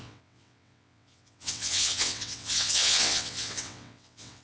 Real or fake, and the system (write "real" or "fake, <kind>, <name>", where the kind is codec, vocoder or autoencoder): fake, vocoder, WaveNeXt